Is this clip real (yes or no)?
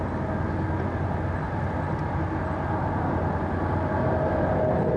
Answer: yes